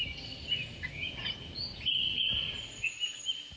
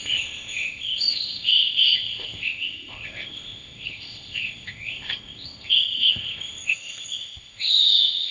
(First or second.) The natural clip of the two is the first